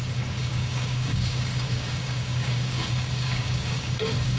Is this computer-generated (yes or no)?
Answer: yes